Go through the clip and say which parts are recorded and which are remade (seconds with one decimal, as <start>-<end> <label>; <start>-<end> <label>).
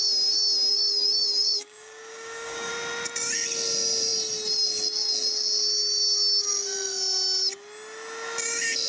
0.0-0.7 recorded; 0.7-2.7 remade; 2.7-8.9 recorded